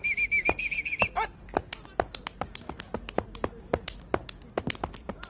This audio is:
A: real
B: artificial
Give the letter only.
A